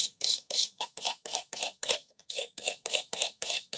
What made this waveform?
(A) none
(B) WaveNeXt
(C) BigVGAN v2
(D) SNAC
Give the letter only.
D